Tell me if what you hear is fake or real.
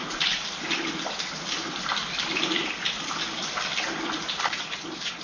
real